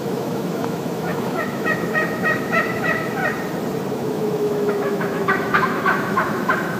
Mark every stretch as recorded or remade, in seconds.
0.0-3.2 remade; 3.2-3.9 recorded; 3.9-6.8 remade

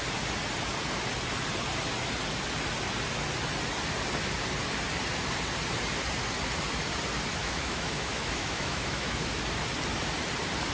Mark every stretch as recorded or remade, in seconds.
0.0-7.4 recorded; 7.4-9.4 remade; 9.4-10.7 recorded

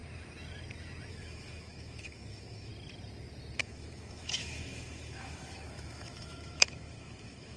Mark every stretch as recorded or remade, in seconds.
0.0-1.1 recorded; 1.1-2.7 remade; 2.7-3.6 recorded; 3.6-7.6 remade

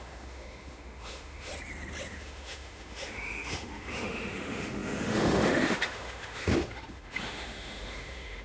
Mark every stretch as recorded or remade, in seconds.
0.0-1.5 remade; 1.5-2.1 recorded; 2.1-8.4 remade

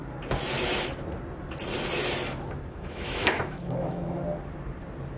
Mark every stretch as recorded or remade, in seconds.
0.0-2.7 recorded; 2.7-4.2 remade; 4.2-5.2 recorded